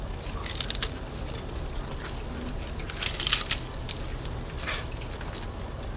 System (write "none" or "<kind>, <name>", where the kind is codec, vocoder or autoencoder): none